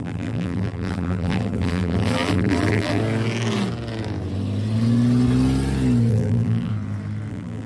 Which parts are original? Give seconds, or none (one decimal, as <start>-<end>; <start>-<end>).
3.0-6.1; 6.7-7.3